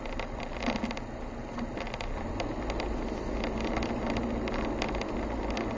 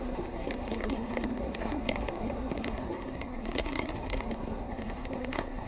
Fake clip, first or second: second